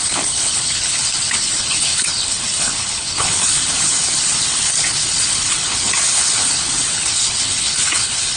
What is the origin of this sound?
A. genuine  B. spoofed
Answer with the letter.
B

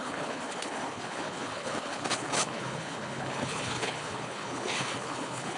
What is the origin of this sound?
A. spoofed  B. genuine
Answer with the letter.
A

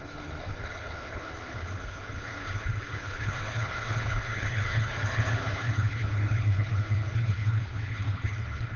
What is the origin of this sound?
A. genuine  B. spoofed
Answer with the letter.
B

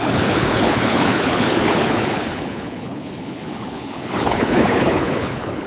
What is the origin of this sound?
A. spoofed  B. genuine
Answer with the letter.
A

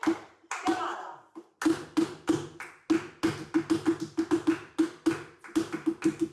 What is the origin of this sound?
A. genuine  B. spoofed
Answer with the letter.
A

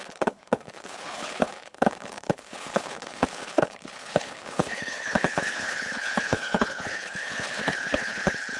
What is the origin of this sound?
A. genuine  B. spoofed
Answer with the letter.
B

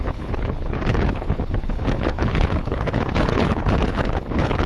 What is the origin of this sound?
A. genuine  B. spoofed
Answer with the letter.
B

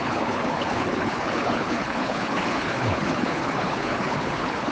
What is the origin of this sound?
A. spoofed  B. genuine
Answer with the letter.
A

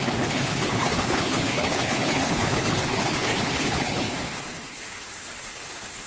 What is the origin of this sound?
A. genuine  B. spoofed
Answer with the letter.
B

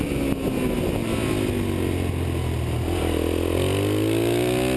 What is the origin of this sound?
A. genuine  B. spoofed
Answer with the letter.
A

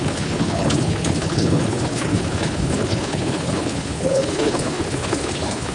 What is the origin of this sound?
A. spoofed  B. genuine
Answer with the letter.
A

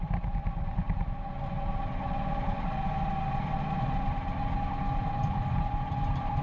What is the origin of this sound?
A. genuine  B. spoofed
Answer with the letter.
A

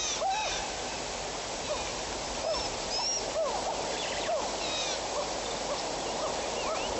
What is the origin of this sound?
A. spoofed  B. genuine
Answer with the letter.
B